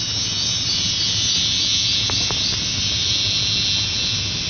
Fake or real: real